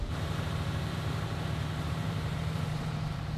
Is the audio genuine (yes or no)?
no